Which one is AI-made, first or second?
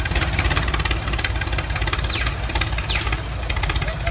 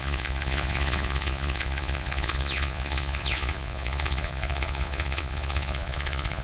second